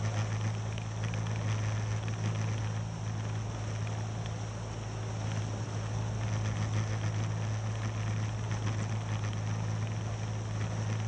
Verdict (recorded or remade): recorded